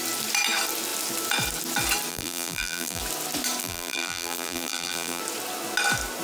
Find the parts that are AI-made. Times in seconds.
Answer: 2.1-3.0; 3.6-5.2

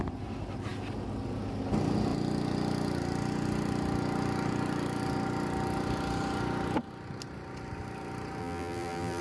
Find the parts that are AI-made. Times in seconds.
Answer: 8.4-9.2